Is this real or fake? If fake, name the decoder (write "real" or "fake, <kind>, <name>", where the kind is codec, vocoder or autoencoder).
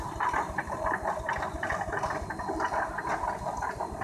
real